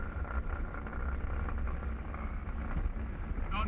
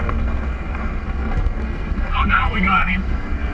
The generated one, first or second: second